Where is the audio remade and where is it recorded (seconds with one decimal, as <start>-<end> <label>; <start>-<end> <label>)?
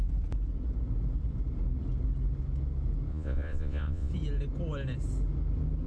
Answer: 0.0-3.1 recorded; 3.1-4.1 remade; 4.1-5.9 recorded